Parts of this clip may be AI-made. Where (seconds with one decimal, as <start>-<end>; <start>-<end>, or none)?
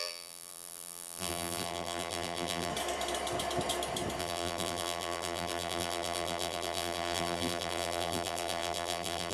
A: 0.0-2.7; 4.2-9.3